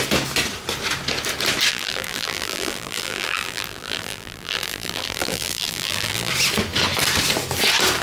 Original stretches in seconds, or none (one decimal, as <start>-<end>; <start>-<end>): 0.0-1.7; 6.3-8.0